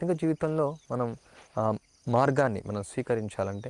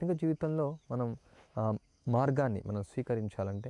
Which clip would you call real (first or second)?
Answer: first